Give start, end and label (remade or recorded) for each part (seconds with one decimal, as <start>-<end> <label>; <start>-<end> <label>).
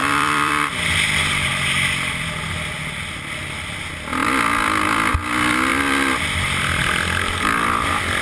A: 0.0-0.5 remade; 0.5-8.2 recorded